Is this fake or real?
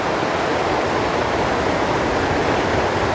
real